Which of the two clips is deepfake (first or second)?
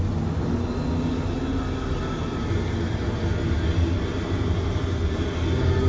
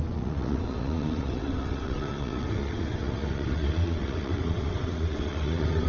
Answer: second